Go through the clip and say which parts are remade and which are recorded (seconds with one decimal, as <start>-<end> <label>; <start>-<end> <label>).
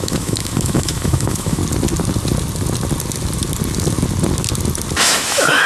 0.0-1.6 remade; 1.6-5.0 recorded; 5.0-5.7 remade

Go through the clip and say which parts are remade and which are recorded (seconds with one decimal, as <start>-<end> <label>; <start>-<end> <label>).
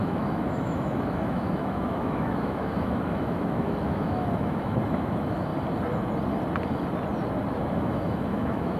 0.0-5.5 remade; 5.5-7.5 recorded; 7.5-8.8 remade